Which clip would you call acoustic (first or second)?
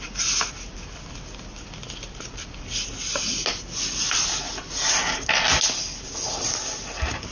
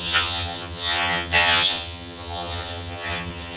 first